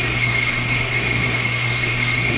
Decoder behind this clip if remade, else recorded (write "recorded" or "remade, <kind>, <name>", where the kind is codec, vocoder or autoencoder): remade, codec, SNAC